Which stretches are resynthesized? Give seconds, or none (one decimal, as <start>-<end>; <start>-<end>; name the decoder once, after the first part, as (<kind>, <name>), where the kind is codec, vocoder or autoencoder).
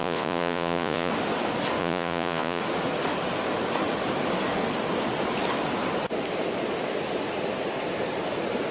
0.0-1.1 (vocoder, Vocos); 1.8-2.6